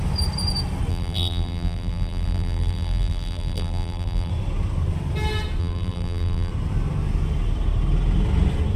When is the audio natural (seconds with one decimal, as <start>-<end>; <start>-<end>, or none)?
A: 0.0-0.9; 4.3-5.6; 6.5-8.8